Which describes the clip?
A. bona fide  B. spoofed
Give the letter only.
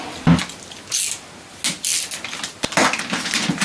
A